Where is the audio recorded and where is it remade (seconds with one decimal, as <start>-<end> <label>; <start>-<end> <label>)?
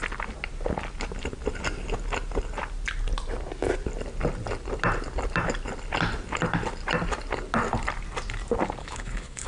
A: 0.0-8.8 recorded; 8.8-9.5 remade